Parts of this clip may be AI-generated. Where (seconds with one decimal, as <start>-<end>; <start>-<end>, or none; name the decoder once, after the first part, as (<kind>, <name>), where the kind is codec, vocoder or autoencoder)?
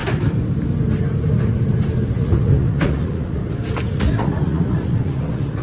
2.1-3.4 (vocoder, Vocos); 3.9-5.6